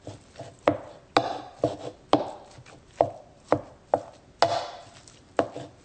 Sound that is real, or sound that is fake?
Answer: real